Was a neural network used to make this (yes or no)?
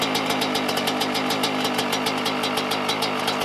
no